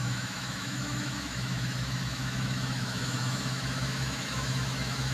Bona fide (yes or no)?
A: no